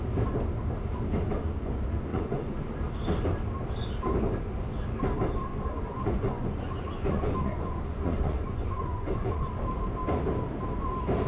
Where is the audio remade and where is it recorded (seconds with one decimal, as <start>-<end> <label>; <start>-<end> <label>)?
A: 0.0-2.1 recorded; 2.1-2.7 remade; 2.7-5.5 recorded; 5.5-9.5 remade; 9.5-11.3 recorded